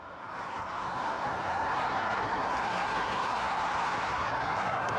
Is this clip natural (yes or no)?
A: no